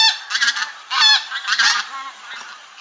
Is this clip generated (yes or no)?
no